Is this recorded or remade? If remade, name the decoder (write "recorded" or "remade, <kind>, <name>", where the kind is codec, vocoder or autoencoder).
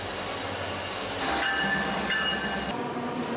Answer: recorded